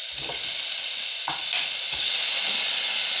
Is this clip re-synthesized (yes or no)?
no